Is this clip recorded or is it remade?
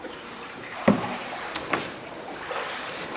remade